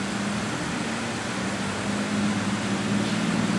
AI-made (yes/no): no